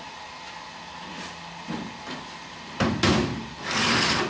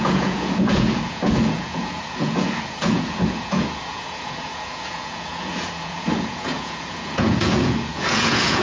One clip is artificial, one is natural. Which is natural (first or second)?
first